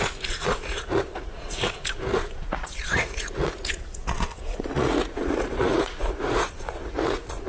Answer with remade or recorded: remade